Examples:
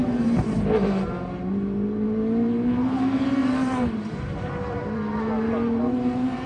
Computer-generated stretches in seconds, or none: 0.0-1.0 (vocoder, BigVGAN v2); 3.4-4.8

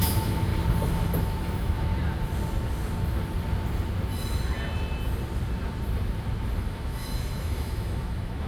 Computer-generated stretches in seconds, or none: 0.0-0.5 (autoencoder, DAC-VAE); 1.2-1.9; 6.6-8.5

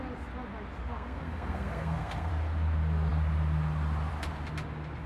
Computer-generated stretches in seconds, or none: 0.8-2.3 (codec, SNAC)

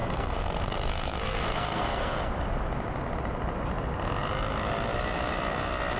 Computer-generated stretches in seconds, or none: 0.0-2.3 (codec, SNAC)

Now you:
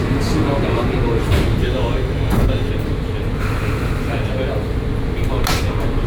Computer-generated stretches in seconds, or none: 1.6-2.7 (autoencoder, DAC-VAE)